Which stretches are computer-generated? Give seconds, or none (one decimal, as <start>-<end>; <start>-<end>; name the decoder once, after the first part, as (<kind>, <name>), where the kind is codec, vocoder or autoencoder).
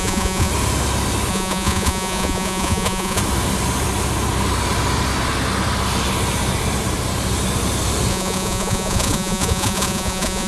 0.0-0.5 (vocoder, Vocos); 1.3-3.2; 8.1-10.5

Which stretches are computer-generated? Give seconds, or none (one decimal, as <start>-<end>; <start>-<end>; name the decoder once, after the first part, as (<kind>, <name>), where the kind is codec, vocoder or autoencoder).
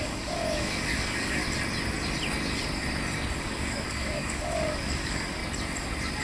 0.0-1.4 (codec, DAC); 3.4-5.4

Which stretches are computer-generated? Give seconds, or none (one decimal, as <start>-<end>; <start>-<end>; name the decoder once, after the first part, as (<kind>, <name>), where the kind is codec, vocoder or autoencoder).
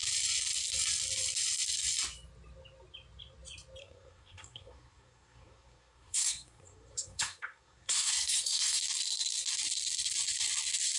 3.8-8.8 (codec, SNAC)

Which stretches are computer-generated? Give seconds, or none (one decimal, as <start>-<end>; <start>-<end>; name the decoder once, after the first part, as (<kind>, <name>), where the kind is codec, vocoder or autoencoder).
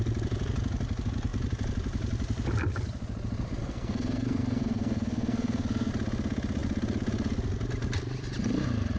3.6-5.9 (codec, SNAC)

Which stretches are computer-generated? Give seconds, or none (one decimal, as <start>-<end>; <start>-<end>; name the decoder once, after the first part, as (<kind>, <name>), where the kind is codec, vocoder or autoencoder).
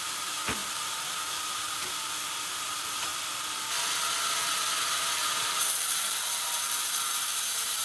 0.0-3.1 (vocoder, BigVGAN v2); 4.9-7.8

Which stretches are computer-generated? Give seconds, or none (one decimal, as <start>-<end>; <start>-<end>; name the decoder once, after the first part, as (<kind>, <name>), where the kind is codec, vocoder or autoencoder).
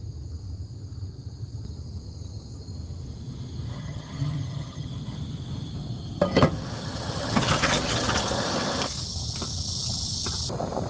3.8-4.9 (vocoder, HiFi-GAN); 6.8-8.4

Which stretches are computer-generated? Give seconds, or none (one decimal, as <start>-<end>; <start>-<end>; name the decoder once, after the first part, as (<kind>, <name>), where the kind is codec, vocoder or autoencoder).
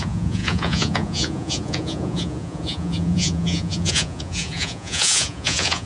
0.0-5.9 (vocoder, Vocos)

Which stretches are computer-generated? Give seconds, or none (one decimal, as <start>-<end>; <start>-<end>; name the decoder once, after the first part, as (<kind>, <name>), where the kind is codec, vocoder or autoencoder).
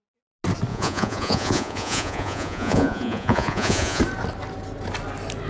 0.7-4.0 (vocoder, Vocos)